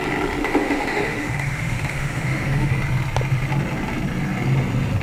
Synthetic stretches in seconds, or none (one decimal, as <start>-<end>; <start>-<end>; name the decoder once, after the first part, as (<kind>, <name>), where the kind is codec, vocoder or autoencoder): 0.4-2.7 (autoencoder, DAC-VAE)